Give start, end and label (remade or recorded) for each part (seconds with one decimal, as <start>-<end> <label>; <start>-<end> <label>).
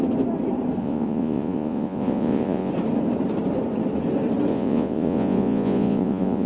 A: 0.0-0.8 recorded; 0.8-2.7 remade; 2.7-4.5 recorded; 4.5-6.5 remade